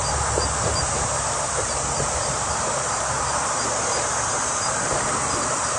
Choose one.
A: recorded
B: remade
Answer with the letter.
B